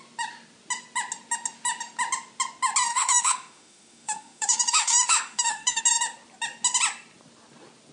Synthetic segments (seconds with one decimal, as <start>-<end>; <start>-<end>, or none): 2.9-5.8